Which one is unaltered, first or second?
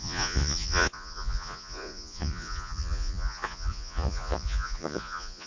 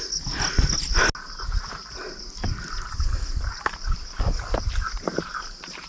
second